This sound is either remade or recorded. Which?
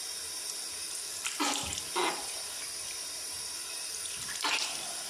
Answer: recorded